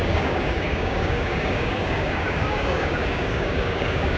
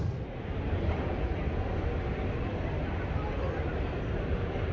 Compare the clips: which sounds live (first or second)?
second